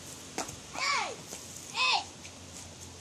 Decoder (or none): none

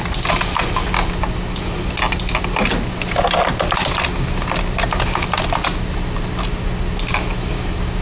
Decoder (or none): none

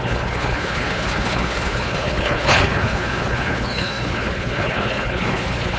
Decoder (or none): codec, HILCodec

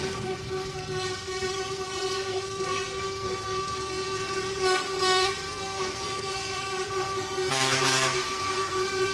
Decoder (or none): codec, SNAC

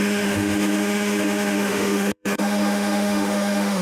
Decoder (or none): autoencoder, DAC-VAE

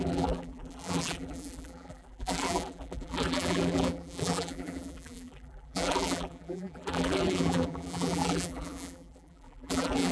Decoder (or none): vocoder, BigVGAN v2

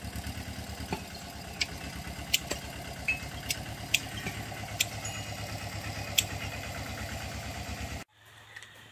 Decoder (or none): none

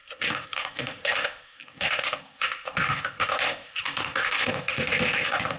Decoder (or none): codec, ZipCodec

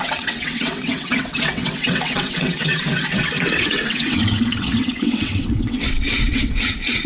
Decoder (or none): vocoder, WaveNeXt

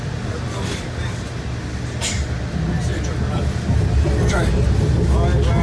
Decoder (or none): none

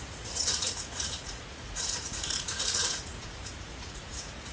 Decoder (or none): vocoder, Vocos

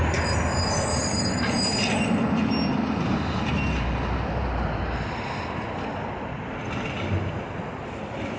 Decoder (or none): none